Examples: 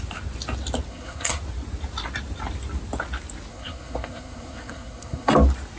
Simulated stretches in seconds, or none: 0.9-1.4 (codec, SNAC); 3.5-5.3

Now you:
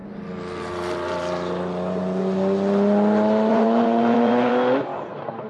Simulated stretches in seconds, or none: 3.5-4.5 (vocoder, Vocos)

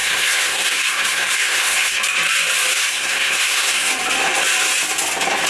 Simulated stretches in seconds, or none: 0.0-2.0 (codec, SNAC); 2.7-3.9

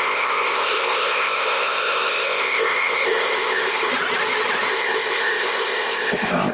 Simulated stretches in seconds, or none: 0.0-3.9 (codec, ZipCodec); 4.7-6.5

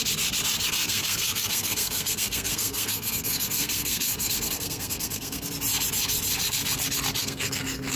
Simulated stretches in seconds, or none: 0.7-5.5 (codec, SNAC); 7.2-8.0

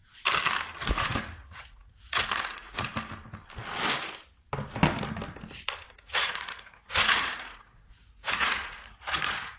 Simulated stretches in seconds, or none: 0.8-2.9 (vocoder, Vocos); 5.9-9.6

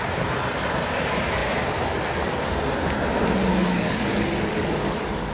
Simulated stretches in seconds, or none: 3.5-5.3 (codec, DAC)